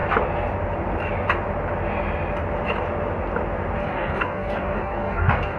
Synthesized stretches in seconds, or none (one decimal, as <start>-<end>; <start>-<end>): 3.8-5.6